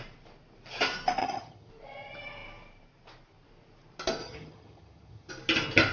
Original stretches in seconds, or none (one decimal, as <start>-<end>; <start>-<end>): 0.0-1.2; 1.7-4.2; 5.3-5.9